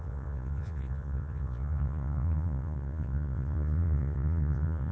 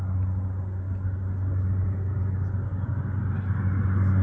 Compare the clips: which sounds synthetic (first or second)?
first